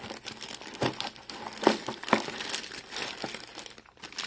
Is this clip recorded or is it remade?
recorded